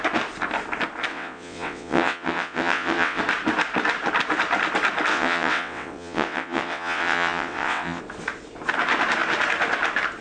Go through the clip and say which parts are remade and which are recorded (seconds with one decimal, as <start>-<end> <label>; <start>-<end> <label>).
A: 0.0-1.1 recorded; 1.1-3.2 remade; 3.2-5.1 recorded; 5.1-8.0 remade; 8.0-10.2 recorded